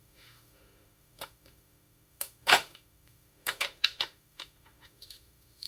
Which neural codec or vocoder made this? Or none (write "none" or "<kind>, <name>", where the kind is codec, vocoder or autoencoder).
autoencoder, DAC-VAE